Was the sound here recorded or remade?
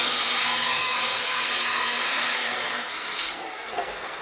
remade